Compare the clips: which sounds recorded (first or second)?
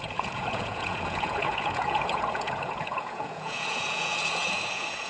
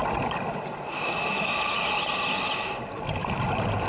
second